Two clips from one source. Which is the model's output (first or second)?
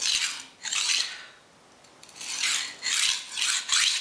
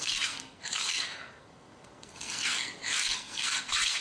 second